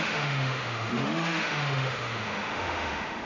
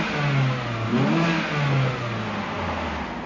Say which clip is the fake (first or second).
first